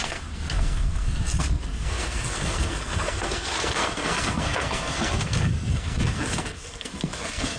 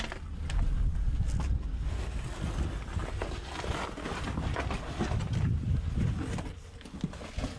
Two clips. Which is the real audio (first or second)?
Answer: second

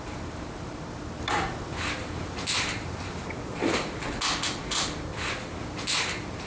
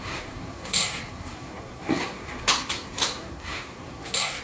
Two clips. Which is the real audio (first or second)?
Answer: first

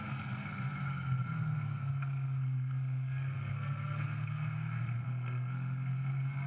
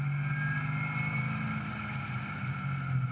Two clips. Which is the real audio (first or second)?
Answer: second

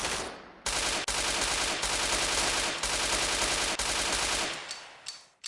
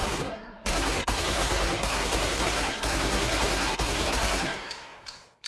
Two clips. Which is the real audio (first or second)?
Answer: first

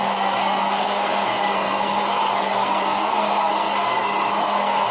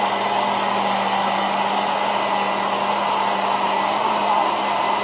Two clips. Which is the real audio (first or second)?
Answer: second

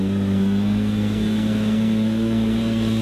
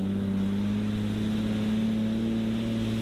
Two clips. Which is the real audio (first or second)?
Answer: second